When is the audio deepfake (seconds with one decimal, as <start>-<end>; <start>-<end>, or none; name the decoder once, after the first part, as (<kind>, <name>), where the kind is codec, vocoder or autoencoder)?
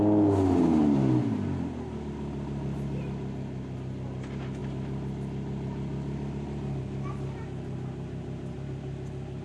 none